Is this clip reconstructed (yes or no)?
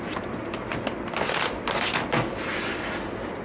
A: no